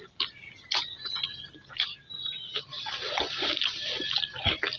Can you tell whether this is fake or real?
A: real